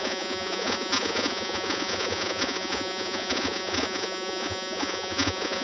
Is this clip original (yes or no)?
no